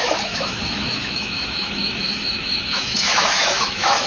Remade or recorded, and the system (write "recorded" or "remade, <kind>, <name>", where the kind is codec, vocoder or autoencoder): remade, autoencoder, DAC-VAE